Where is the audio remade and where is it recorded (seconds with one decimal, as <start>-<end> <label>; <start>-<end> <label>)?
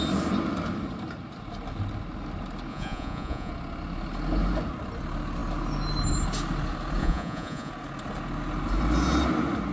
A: 0.0-2.7 recorded; 2.7-3.5 remade; 3.5-7.0 recorded; 7.0-7.7 remade; 7.7-9.7 recorded